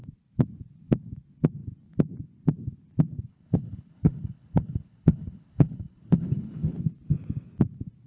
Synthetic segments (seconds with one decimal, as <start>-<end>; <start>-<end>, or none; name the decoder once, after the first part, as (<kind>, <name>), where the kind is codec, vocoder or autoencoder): 3.3-6.8 (codec, HILCodec)